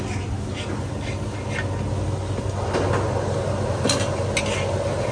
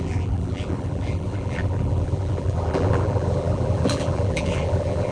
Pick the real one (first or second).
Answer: first